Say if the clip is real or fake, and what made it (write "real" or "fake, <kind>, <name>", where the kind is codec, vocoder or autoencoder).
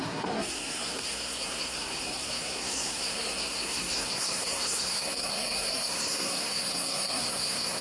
fake, codec, SNAC